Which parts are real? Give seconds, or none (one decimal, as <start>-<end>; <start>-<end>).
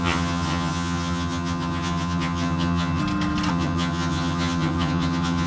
3.0-3.5